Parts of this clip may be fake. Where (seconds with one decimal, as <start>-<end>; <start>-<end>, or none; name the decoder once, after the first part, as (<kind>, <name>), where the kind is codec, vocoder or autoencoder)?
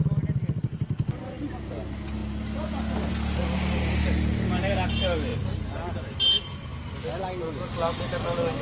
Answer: none